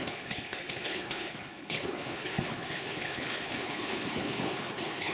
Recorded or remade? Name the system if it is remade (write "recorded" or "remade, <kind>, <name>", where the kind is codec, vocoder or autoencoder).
remade, codec, HILCodec